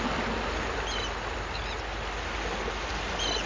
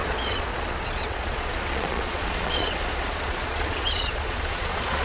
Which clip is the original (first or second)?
first